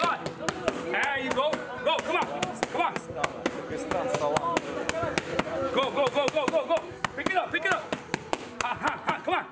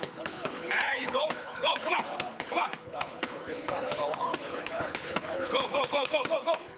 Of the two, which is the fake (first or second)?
second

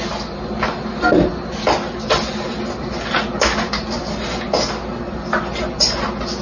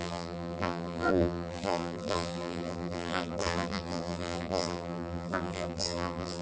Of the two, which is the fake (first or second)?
second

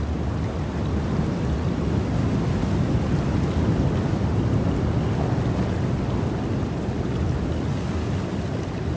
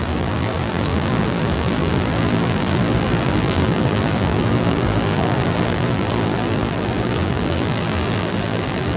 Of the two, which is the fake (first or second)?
second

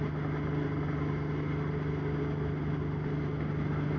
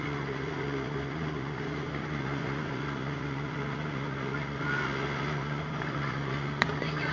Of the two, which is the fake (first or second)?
second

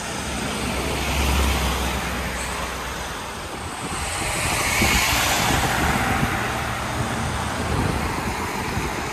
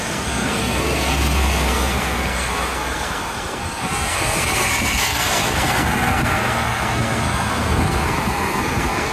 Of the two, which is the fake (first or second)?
second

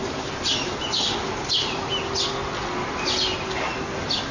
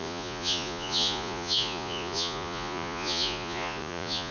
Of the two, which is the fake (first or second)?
second